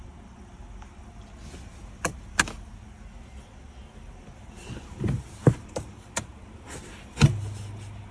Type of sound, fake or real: real